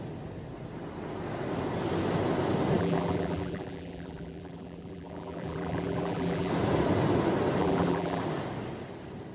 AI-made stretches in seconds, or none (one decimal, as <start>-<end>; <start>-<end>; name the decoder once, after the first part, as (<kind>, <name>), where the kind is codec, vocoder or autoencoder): 2.8-6.5 (vocoder, BigVGAN v2); 7.6-8.2